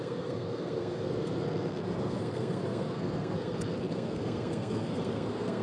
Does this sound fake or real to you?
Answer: fake